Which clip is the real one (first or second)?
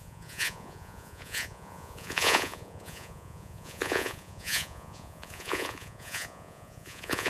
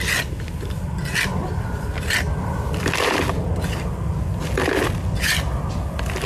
second